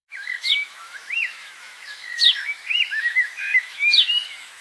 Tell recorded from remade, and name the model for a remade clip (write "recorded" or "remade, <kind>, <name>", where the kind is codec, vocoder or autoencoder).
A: remade, autoencoder, DAC-VAE